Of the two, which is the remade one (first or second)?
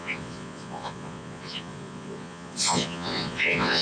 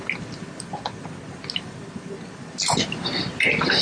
first